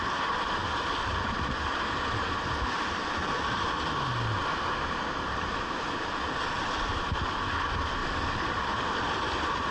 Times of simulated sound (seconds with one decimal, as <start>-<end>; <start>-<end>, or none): none

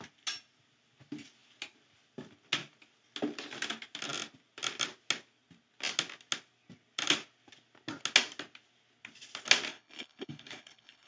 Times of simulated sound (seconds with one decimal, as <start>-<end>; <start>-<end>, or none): 9.7-11.1

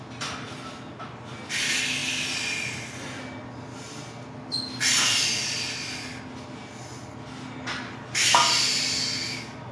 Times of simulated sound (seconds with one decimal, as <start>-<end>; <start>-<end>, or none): none

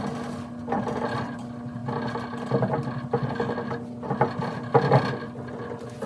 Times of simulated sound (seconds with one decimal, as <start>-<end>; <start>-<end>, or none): none

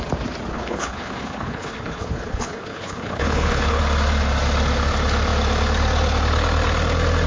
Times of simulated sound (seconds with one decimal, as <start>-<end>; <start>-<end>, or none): 0.5-3.8

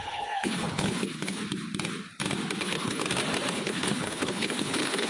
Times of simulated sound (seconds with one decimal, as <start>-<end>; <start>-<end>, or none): 0.0-1.4; 2.6-3.0; 3.5-5.1

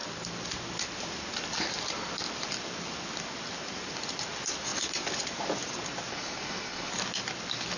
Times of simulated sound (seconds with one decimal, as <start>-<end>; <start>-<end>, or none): 6.1-6.9

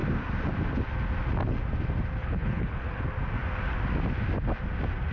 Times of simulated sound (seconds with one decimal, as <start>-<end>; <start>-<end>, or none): 2.2-3.0